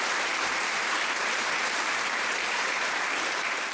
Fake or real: fake